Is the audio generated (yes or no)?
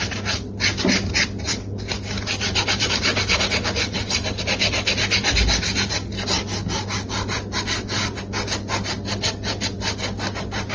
no